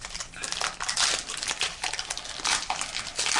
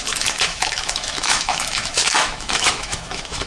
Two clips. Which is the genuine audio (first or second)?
first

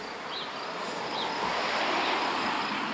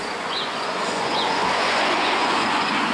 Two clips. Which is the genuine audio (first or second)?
first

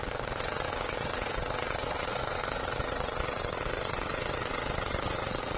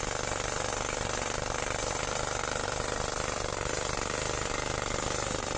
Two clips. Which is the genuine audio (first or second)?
second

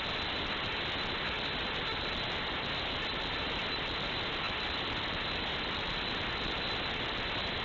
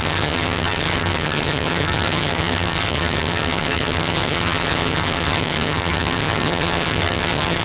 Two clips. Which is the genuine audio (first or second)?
first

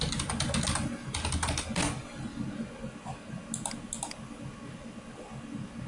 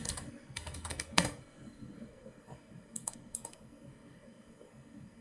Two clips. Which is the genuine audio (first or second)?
first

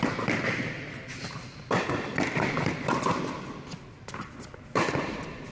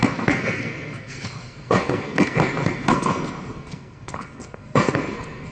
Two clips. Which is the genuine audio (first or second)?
first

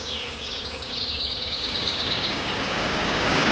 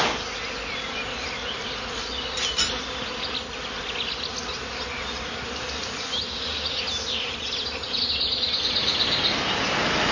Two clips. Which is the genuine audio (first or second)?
second